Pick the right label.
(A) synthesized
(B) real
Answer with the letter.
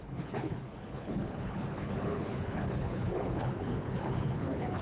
A